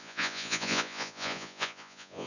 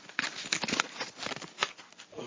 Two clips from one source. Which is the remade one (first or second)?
first